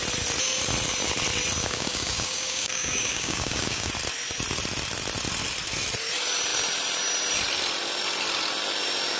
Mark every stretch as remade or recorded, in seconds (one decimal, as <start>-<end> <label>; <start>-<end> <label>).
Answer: 0.0-1.6 recorded; 1.6-3.9 remade; 3.9-9.2 recorded